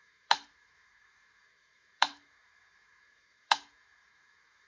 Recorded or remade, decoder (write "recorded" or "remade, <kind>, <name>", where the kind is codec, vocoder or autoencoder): remade, autoencoder, DAC-VAE